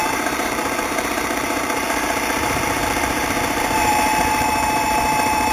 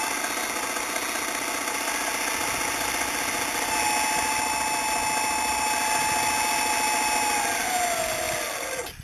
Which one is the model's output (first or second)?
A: first